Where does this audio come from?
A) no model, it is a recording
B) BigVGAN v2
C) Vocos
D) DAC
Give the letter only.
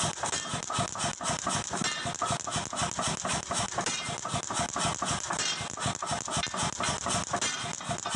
A